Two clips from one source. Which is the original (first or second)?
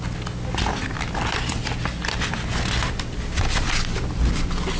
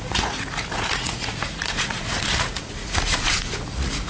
first